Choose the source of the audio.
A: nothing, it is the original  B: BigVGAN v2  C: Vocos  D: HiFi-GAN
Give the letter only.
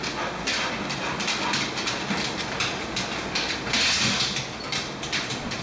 A